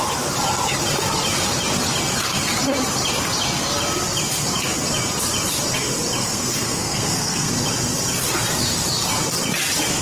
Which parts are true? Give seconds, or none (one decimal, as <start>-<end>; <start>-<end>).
0.0-6.2; 7.5-10.0